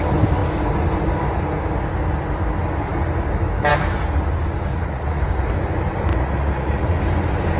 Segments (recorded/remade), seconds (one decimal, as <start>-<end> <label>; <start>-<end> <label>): 0.0-4.7 recorded; 4.7-5.2 remade; 5.2-6.1 recorded; 6.1-7.0 remade; 7.0-7.6 recorded